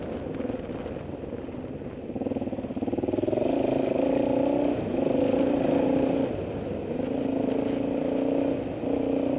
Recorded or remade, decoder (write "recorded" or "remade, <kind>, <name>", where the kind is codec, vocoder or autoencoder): recorded